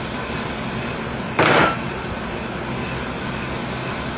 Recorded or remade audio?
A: recorded